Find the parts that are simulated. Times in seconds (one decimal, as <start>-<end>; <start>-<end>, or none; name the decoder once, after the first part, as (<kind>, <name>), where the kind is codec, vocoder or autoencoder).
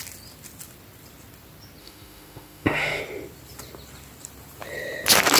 1.8-3.0 (autoencoder, DAC-VAE)